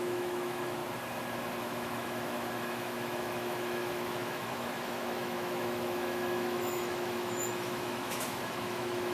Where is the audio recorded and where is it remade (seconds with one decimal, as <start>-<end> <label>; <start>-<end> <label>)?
0.0-0.8 remade; 0.8-1.6 recorded; 1.6-9.1 remade